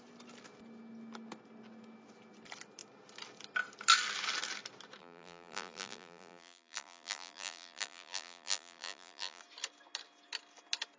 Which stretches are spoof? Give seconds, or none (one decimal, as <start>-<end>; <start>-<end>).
5.0-9.4